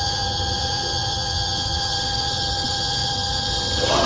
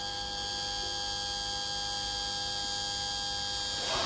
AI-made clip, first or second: first